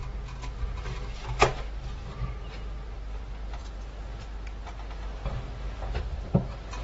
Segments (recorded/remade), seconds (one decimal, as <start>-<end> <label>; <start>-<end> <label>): 0.0-6.8 recorded